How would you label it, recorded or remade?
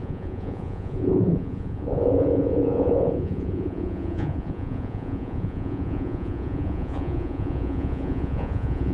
remade